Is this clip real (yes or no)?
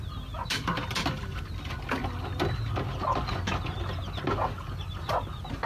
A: yes